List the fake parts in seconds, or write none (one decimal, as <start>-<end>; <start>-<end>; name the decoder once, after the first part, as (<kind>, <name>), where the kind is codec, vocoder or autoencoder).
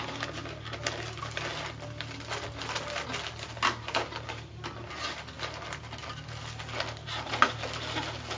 none